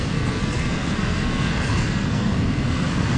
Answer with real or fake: fake